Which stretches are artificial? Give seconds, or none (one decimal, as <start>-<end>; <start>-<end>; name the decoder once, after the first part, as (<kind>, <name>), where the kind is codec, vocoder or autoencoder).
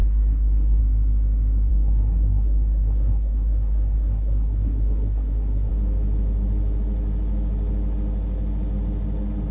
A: 0.0-0.8 (codec, SNAC); 1.7-5.7